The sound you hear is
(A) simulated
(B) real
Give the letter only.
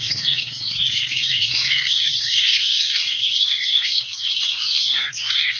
A